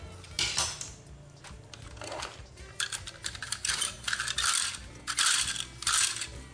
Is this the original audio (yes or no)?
yes